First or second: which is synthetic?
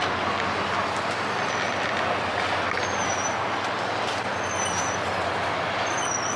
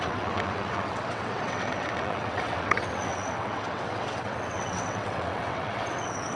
second